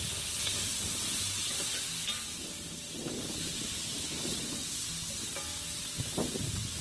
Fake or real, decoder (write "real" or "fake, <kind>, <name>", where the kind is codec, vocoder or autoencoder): real